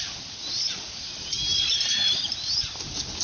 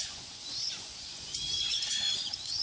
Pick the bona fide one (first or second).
first